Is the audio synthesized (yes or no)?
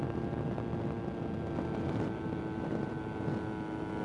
no